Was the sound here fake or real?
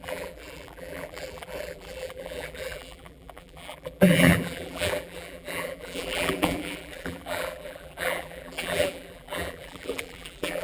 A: fake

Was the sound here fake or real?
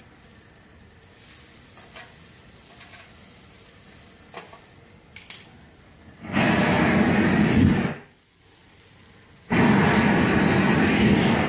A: real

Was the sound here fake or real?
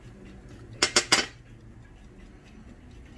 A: real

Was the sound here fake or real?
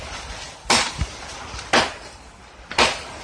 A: real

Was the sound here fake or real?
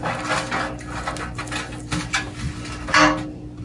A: real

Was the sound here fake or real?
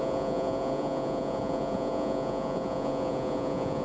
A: fake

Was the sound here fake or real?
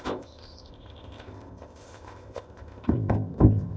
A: fake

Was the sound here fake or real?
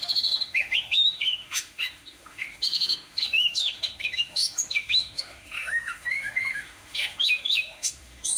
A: fake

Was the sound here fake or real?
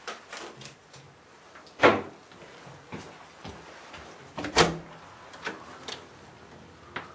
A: real